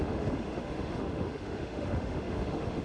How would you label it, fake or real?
fake